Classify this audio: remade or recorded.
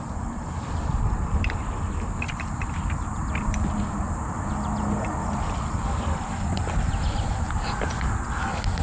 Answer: recorded